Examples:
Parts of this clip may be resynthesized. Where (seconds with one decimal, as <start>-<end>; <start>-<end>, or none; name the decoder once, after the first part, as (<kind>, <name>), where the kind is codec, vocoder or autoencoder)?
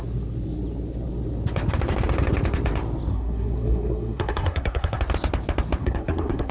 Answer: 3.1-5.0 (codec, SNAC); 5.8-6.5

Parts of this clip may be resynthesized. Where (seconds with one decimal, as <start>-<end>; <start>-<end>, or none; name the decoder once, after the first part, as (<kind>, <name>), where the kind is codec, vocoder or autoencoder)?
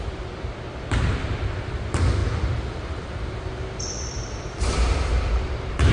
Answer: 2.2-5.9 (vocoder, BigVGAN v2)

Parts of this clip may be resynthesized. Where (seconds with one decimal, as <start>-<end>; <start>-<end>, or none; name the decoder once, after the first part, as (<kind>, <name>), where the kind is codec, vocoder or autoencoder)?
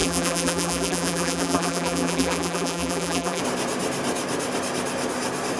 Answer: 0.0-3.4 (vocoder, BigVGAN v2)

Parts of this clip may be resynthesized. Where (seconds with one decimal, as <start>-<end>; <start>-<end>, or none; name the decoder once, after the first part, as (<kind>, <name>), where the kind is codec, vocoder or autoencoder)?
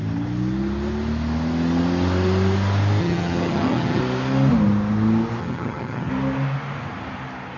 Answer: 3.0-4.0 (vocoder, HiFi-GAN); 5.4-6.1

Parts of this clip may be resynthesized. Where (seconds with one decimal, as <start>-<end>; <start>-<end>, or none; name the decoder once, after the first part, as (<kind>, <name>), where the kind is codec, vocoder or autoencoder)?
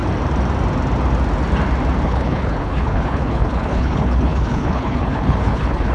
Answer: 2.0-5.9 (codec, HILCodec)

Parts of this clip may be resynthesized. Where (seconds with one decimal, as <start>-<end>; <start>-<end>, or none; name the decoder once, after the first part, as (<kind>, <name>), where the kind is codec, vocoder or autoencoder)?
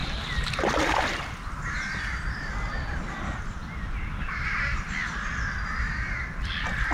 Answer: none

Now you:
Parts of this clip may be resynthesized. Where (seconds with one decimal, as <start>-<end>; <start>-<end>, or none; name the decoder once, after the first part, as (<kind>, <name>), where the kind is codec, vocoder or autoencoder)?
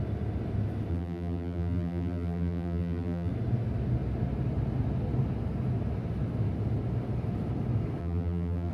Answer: 0.9-3.3 (vocoder, BigVGAN v2); 8.0-8.7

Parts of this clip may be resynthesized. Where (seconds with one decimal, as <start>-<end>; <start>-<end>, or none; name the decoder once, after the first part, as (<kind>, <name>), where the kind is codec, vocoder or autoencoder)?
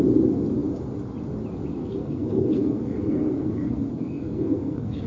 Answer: 1.8-5.1 (codec, SNAC)